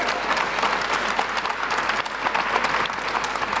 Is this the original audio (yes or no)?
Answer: yes